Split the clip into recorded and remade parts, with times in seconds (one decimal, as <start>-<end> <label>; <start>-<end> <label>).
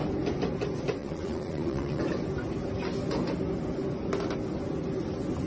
0.0-1.0 recorded; 1.0-2.0 remade; 2.0-5.5 recorded